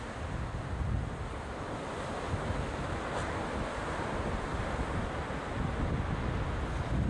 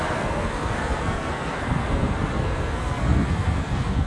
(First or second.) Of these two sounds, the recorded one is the first